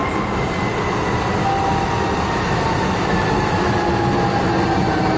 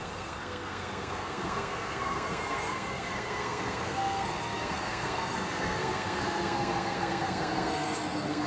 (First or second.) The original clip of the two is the first